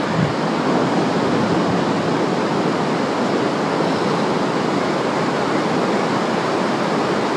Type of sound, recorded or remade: recorded